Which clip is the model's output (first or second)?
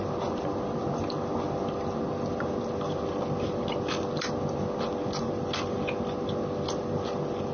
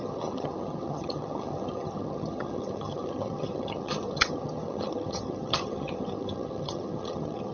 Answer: second